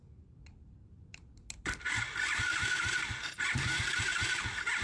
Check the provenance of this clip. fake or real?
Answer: real